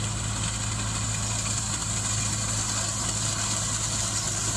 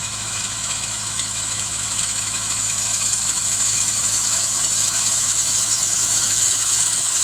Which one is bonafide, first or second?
first